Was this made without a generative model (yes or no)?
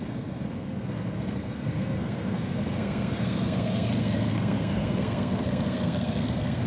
no